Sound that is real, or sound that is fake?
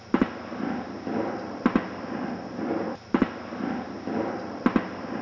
real